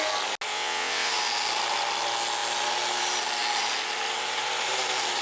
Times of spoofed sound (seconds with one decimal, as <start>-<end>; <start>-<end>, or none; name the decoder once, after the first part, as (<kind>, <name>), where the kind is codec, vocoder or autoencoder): 0.5-1.1 (vocoder, WaveNeXt)